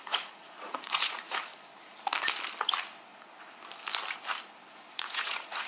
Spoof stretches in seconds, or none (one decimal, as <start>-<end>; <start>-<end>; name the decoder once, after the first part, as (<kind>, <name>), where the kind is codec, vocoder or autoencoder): 0.0-1.5 (vocoder, Vocos); 4.9-5.7